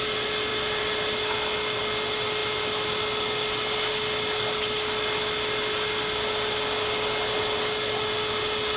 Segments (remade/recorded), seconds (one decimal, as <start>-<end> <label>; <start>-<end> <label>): 0.0-8.8 recorded